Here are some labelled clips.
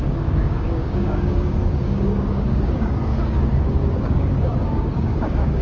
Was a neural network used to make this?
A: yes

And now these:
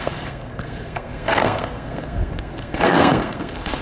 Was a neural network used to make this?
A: yes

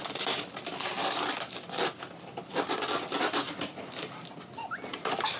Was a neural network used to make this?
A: no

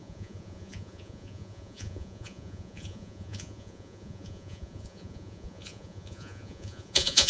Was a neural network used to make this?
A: yes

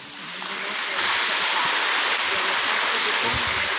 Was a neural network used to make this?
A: yes